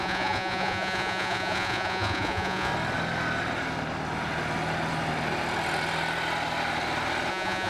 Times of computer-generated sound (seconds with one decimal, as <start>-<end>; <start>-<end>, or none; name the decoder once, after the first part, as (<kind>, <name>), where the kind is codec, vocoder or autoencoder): 0.0-2.7 (vocoder, Vocos); 7.3-7.7